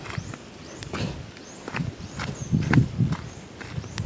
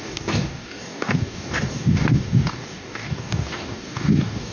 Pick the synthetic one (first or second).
second